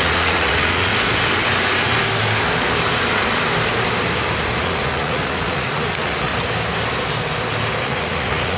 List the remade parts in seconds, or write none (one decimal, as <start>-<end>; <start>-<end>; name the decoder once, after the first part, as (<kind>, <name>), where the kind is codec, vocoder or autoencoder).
0.0-0.9 (vocoder, Vocos); 4.6-6.3; 7.8-8.6